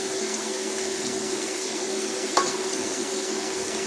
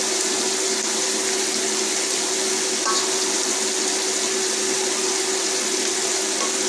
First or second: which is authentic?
second